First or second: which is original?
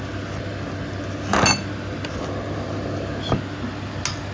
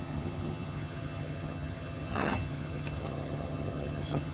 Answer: first